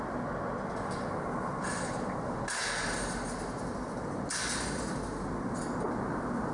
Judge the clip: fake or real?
real